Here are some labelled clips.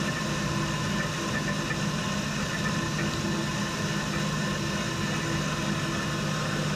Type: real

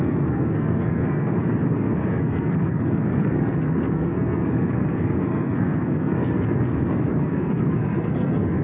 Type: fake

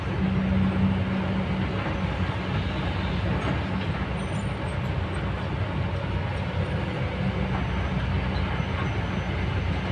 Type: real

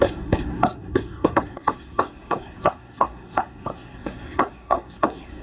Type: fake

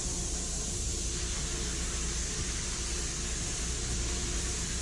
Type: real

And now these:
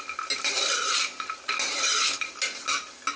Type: real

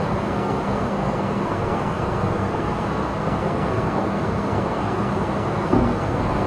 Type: fake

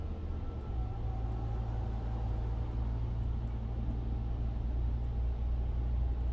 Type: real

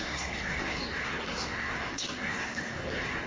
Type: fake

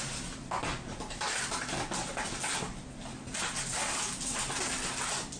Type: real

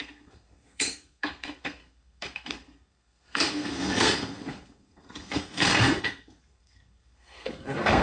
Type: fake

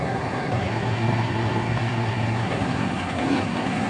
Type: fake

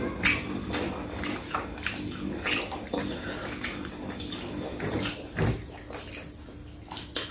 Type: real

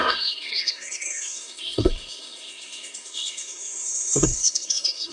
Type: fake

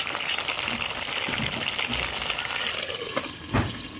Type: real